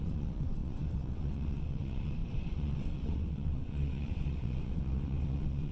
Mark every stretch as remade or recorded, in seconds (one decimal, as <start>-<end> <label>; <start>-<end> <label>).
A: 0.0-5.7 remade